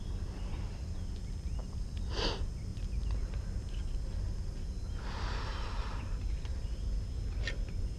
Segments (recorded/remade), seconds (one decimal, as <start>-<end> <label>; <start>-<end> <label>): 0.0-8.0 recorded